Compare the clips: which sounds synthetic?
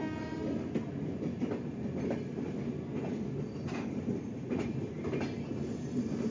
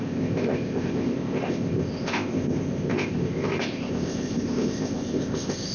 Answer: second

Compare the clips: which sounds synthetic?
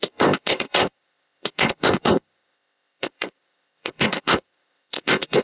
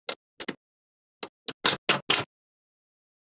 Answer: first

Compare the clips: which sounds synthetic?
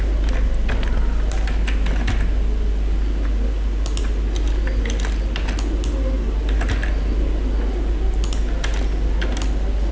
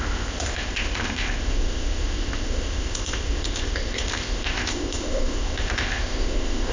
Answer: second